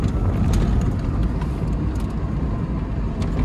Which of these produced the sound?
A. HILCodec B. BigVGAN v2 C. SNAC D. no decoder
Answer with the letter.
D